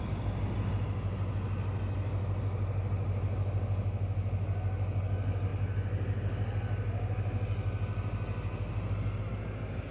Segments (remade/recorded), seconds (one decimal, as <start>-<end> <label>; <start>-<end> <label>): 0.0-9.9 recorded

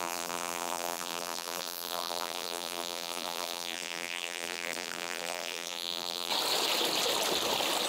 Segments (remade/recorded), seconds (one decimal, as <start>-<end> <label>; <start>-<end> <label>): 0.0-6.3 remade; 6.3-7.9 recorded

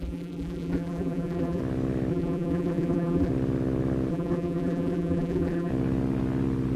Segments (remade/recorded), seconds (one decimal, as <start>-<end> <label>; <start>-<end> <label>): 0.0-1.6 remade; 1.6-2.1 recorded; 2.1-3.3 remade; 3.3-4.1 recorded; 4.1-5.7 remade; 5.7-6.8 recorded

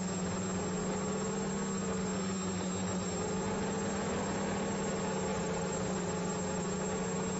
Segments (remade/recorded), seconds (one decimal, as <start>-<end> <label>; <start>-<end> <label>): 0.0-5.3 recorded; 5.3-6.3 remade; 6.3-7.4 recorded

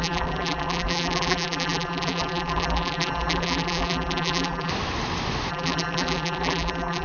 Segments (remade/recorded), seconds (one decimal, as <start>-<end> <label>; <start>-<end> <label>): 0.0-4.7 remade; 4.7-5.5 recorded; 5.5-7.0 remade

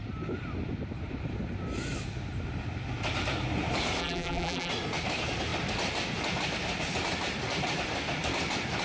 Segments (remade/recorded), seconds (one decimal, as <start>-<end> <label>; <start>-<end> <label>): 0.0-4.0 recorded; 4.0-4.7 remade; 4.7-8.8 recorded